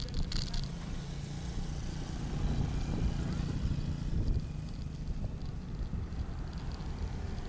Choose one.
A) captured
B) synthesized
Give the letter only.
A